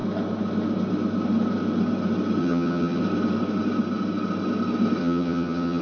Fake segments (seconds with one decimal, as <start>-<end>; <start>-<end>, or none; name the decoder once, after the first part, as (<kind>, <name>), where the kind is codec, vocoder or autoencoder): 2.4-3.0 (vocoder, HiFi-GAN); 5.0-5.8